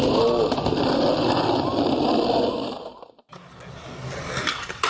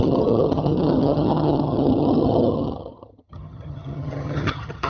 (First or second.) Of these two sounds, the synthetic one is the second